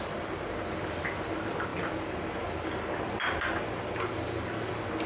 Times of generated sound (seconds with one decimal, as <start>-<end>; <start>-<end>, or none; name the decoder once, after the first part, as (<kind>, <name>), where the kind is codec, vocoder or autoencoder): none